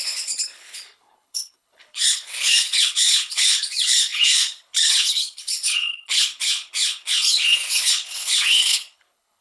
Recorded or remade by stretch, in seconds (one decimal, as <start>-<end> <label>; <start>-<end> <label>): 0.0-9.4 remade